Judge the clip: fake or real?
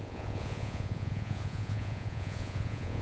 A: fake